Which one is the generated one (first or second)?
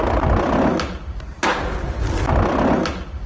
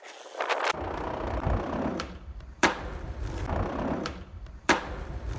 second